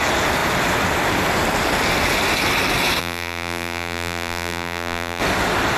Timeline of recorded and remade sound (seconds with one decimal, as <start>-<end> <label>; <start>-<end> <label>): 0.0-3.0 recorded; 3.0-5.2 remade; 5.2-5.8 recorded